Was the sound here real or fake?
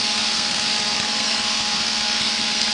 fake